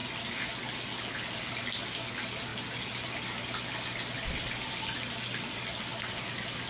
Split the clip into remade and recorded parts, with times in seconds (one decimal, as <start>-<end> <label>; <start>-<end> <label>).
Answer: 0.0-6.7 recorded